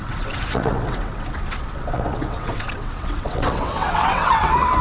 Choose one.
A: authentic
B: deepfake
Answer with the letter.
B